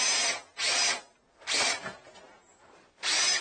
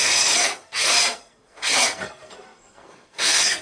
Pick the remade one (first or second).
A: second